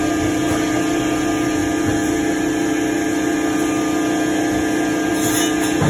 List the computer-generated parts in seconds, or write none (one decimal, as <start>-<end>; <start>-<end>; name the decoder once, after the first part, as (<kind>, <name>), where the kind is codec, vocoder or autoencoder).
none